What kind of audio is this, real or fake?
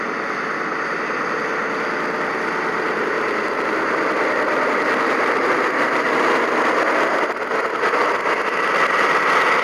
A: real